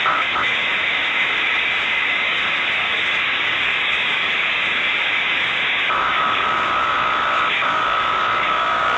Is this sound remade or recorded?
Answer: remade